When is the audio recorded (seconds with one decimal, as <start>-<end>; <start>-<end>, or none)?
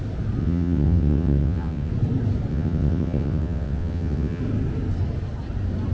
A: 0.0-0.4; 1.9-2.5; 4.4-5.9